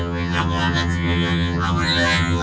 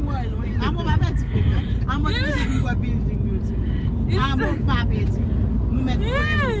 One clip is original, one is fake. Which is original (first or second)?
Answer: second